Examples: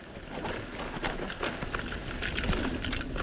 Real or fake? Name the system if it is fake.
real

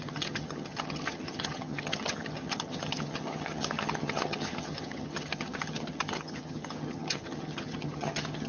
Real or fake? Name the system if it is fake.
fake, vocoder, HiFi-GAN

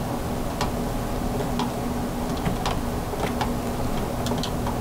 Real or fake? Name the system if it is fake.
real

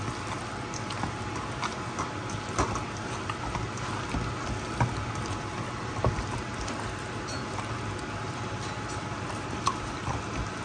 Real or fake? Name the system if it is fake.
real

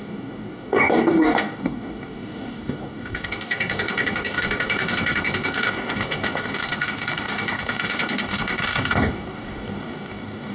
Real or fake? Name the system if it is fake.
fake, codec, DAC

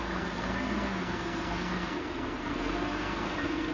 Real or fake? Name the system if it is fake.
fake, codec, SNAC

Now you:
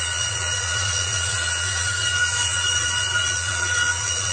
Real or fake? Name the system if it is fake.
fake, vocoder, Vocos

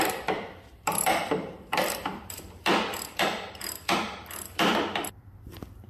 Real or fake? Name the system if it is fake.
fake, vocoder, BigVGAN v2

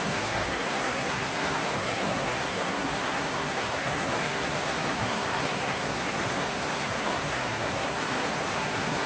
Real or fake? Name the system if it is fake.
fake, codec, SNAC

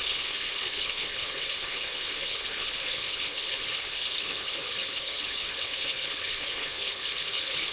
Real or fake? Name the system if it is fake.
fake, codec, HILCodec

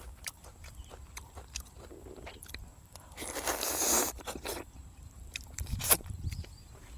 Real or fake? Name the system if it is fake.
fake, vocoder, BigVGAN v2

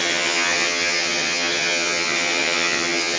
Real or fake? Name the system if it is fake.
fake, vocoder, HiFi-GAN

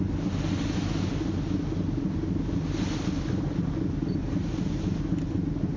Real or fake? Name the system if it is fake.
real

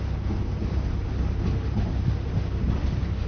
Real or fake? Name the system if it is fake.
real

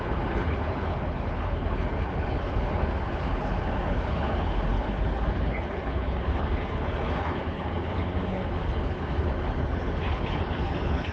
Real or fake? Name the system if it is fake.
fake, codec, HILCodec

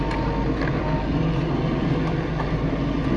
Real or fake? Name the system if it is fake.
real